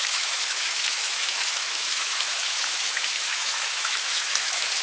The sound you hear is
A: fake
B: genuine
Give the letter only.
A